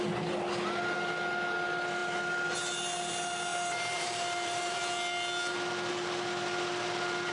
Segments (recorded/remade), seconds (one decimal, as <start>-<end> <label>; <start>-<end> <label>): 0.0-3.5 recorded; 3.5-4.8 remade; 4.8-7.3 recorded